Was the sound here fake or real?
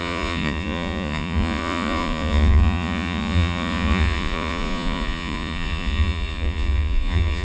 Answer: fake